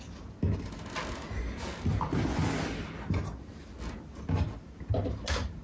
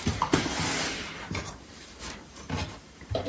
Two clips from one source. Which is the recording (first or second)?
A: first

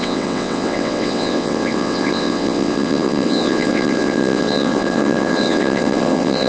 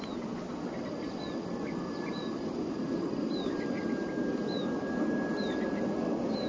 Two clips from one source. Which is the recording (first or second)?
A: second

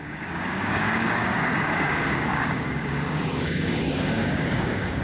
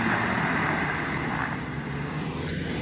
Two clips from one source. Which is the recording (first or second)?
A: second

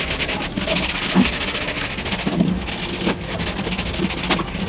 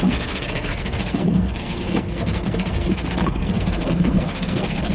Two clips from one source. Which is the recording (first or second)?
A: first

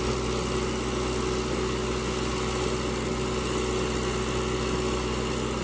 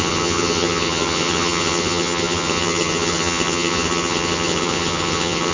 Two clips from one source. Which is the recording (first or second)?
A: first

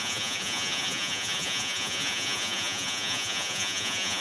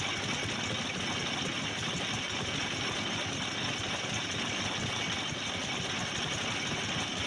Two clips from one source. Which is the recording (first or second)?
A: second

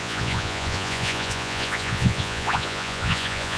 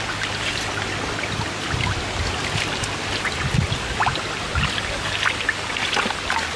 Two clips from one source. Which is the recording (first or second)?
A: second